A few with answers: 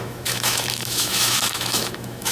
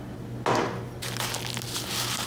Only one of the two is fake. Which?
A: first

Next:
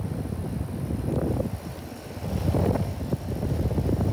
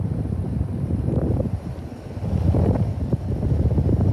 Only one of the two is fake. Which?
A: second